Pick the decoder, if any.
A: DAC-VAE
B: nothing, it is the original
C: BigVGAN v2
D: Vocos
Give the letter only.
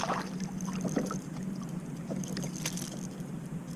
C